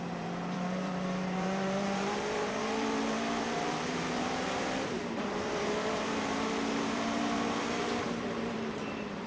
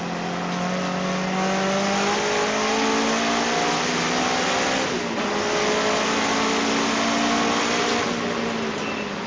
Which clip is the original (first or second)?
second